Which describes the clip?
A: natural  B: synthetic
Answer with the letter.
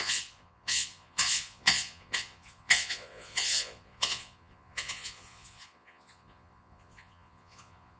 B